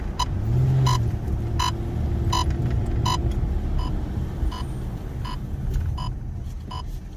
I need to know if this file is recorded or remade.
recorded